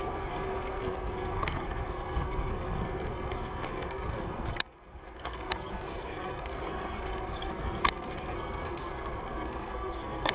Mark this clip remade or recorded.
remade